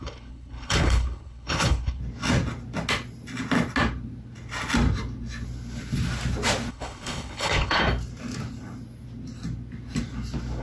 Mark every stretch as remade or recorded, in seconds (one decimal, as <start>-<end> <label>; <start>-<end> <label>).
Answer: 0.0-2.0 remade; 2.0-6.7 recorded; 6.7-7.8 remade; 7.8-10.6 recorded